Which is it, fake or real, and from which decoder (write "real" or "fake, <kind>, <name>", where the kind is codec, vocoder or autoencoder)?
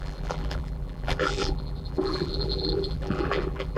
fake, vocoder, BigVGAN v2